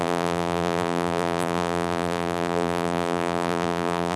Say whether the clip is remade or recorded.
remade